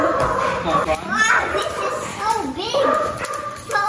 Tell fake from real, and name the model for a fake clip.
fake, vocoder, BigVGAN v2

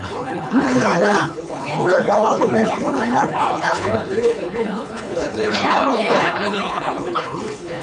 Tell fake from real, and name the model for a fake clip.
fake, codec, HILCodec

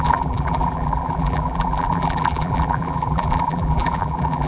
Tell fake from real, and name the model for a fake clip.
fake, vocoder, BigVGAN v2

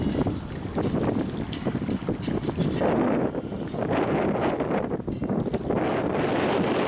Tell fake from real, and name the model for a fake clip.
real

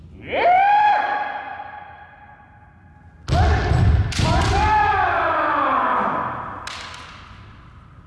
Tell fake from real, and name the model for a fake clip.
real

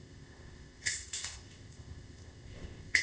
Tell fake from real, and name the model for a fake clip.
fake, codec, ZipCodec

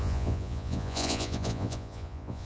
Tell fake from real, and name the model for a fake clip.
fake, vocoder, Vocos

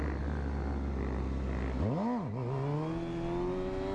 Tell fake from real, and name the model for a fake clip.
real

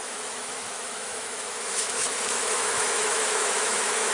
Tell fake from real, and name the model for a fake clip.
fake, autoencoder, DAC-VAE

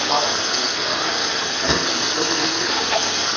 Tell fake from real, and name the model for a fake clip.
fake, codec, SNAC